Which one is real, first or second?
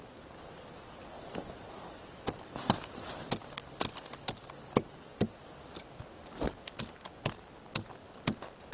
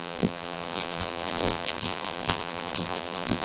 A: first